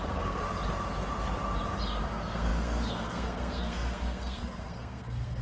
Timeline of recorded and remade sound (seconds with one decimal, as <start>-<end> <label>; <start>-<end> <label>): 0.0-0.4 remade; 0.4-2.0 recorded; 2.0-5.4 remade